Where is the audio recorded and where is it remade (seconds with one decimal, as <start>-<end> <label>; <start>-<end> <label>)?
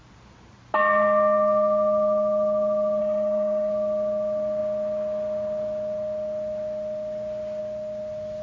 0.0-3.0 recorded; 3.0-3.7 remade; 3.7-8.4 recorded